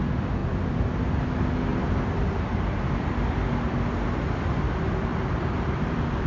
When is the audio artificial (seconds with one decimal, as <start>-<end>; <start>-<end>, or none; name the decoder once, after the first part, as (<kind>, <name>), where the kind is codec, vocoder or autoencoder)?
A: 0.4-1.2 (vocoder, BigVGAN v2); 1.7-3.1; 5.1-6.3